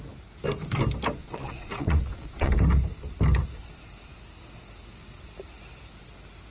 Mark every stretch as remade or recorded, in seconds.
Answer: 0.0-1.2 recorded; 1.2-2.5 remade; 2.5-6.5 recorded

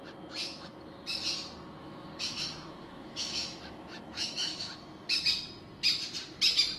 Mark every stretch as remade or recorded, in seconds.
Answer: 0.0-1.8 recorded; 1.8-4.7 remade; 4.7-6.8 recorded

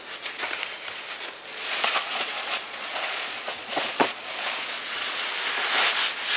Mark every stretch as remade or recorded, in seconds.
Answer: 0.0-1.5 recorded; 1.5-5.3 remade; 5.3-6.4 recorded